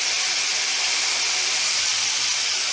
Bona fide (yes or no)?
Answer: yes